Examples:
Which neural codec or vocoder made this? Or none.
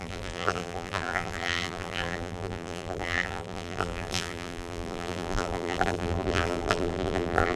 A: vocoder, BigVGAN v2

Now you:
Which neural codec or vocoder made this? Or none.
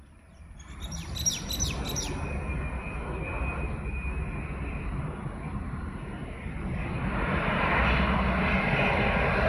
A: none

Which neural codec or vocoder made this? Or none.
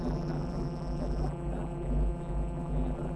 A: vocoder, BigVGAN v2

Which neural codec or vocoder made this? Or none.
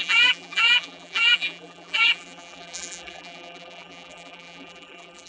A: vocoder, BigVGAN v2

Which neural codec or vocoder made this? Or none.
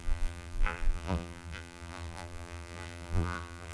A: vocoder, BigVGAN v2